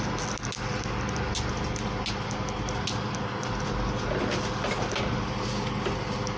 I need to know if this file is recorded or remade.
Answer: recorded